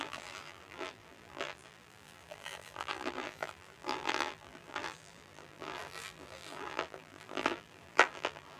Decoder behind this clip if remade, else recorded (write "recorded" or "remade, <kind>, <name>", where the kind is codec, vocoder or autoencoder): remade, vocoder, BigVGAN v2